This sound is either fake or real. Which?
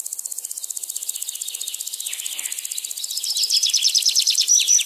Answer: real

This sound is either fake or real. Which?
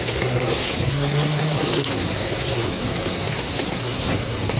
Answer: fake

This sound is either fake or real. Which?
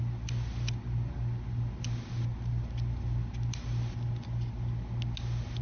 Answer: real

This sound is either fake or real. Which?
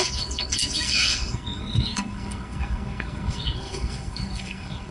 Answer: fake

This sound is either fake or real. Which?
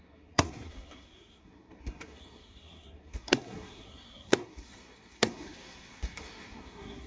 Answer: fake